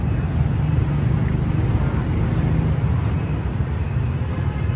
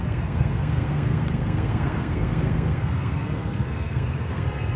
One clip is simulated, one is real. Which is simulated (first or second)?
second